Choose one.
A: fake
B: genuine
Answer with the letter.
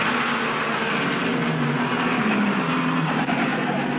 B